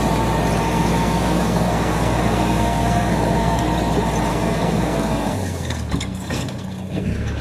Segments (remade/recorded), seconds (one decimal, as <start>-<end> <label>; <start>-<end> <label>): 0.0-0.6 recorded; 0.6-3.6 remade; 3.6-4.3 recorded; 4.3-7.4 remade